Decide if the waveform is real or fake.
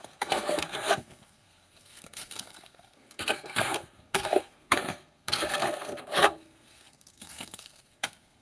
fake